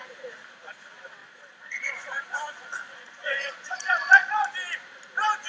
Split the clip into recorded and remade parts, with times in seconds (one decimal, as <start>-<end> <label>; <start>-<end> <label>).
0.0-1.2 recorded; 1.2-4.5 remade; 4.5-5.5 recorded